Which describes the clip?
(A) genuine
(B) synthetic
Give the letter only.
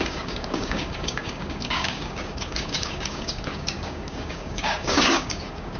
B